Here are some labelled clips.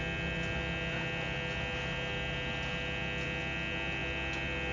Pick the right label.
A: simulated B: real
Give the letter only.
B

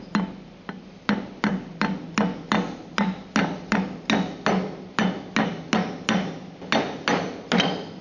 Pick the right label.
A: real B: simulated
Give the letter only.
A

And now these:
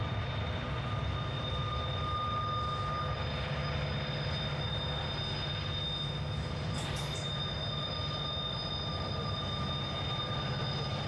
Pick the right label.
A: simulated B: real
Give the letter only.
B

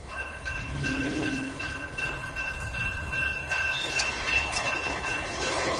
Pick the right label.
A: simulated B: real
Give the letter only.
A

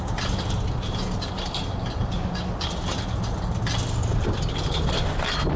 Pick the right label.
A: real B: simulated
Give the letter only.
A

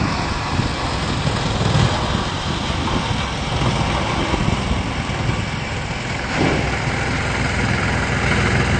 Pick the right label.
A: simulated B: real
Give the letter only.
B